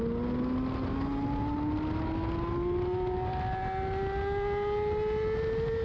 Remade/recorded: recorded